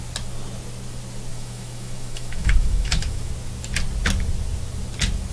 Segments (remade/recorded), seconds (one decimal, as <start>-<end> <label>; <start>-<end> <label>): 0.0-1.3 recorded; 1.3-3.3 remade; 3.3-5.3 recorded